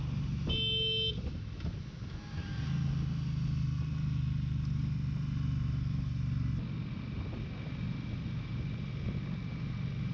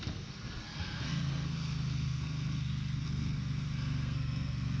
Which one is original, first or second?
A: first